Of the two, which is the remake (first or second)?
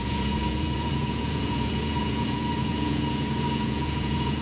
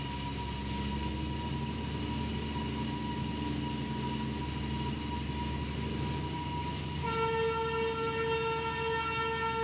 first